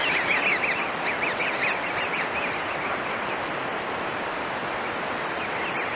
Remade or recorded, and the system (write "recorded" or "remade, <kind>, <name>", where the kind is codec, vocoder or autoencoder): remade, vocoder, BigVGAN v2